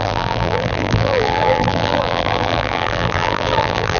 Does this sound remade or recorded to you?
remade